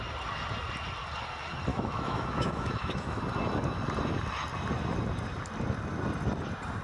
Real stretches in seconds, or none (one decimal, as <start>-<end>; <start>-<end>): 0.0-1.7; 3.2-6.8